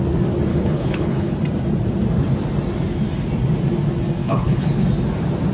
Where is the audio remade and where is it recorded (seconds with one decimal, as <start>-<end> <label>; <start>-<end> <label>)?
0.0-0.5 recorded; 0.5-1.3 remade; 1.3-4.2 recorded; 4.2-4.8 remade; 4.8-5.5 recorded

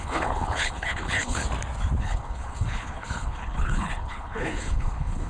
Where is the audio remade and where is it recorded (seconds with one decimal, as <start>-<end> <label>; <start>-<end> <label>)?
0.0-1.4 remade; 1.4-2.0 recorded; 2.0-5.3 remade

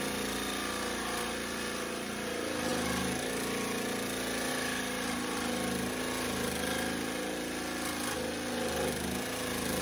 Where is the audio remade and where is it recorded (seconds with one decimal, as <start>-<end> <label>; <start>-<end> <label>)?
0.0-9.8 recorded

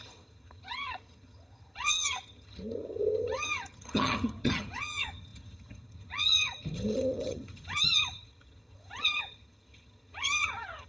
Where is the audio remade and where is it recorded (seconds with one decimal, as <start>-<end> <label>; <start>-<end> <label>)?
0.0-10.9 remade

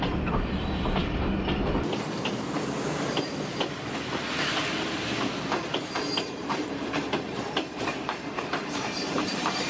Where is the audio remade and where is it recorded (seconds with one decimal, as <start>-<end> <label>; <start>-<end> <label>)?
0.0-1.0 remade; 1.0-5.8 recorded; 5.8-9.7 remade